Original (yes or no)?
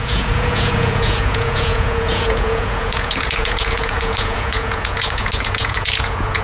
no